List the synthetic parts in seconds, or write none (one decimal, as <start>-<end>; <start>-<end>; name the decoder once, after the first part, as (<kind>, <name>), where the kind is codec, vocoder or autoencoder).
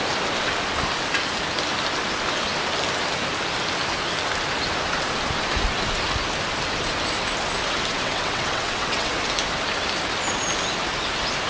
7.9-9.1 (vocoder, WaveNeXt)